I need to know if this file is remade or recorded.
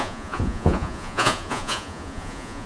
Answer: remade